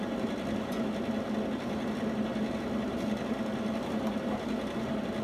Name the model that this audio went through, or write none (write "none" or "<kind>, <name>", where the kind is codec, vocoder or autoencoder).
none